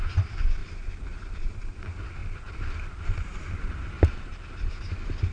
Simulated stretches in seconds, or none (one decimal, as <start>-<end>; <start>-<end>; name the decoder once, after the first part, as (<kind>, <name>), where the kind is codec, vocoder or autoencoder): 0.6-1.5 (vocoder, BigVGAN v2); 2.2-5.3